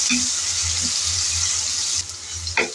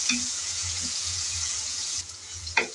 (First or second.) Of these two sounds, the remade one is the second